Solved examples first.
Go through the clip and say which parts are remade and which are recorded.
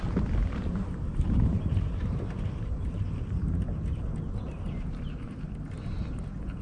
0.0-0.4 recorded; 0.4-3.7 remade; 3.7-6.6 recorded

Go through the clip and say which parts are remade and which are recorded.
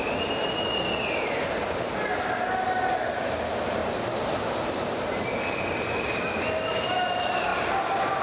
0.0-3.8 recorded; 3.8-5.6 remade; 5.6-7.5 recorded; 7.5-8.2 remade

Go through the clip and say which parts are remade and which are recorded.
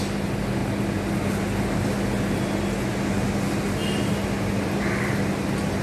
0.0-5.8 recorded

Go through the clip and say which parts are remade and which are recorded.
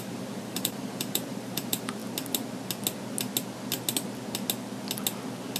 0.0-2.0 remade; 2.0-5.6 recorded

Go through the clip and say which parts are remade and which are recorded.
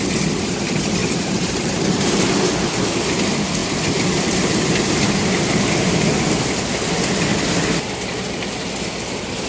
0.0-1.0 recorded; 1.0-2.4 remade; 2.4-7.3 recorded; 7.3-7.9 remade; 7.9-9.5 recorded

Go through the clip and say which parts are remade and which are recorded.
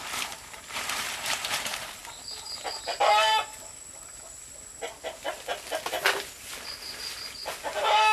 0.0-2.0 remade; 2.0-3.1 recorded; 3.1-3.5 remade; 3.5-7.6 recorded; 7.6-8.1 remade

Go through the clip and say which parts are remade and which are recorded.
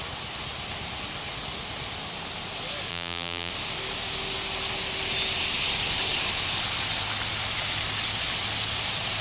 0.0-2.9 recorded; 2.9-3.5 remade; 3.5-9.2 recorded